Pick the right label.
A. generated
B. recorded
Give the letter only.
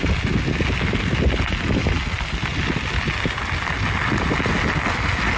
B